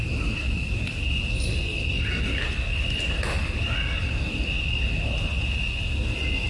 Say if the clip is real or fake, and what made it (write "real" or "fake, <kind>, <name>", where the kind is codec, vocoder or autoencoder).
real